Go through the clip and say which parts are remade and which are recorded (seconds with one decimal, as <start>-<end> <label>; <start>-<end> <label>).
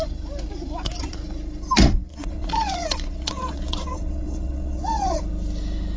0.0-2.1 recorded; 2.1-5.2 remade; 5.2-6.0 recorded